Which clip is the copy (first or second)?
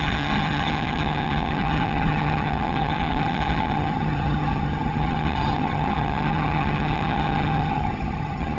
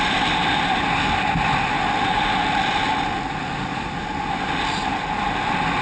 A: first